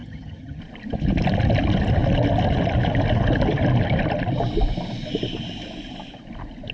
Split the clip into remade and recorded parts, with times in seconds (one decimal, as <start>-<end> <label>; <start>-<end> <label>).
0.0-0.6 remade; 0.6-6.7 recorded